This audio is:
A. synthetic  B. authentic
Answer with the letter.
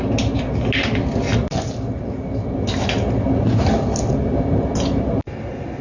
B